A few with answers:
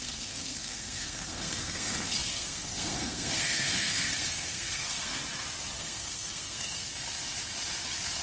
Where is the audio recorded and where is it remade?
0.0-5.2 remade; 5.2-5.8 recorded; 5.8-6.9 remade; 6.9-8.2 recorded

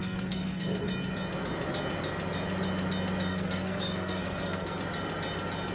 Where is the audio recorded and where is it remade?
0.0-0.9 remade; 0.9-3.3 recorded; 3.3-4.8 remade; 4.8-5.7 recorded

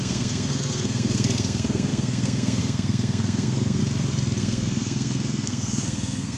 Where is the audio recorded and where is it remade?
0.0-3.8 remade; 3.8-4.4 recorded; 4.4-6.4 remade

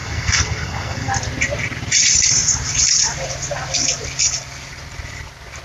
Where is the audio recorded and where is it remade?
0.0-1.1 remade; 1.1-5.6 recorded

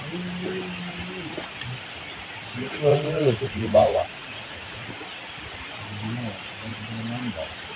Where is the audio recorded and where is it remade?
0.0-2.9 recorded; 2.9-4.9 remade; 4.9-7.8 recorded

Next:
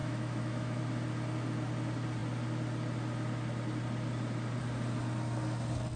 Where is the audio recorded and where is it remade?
0.0-0.8 remade; 0.8-6.0 recorded

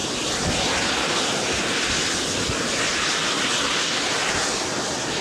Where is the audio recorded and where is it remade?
0.0-5.2 recorded